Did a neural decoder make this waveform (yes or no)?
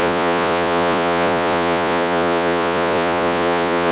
yes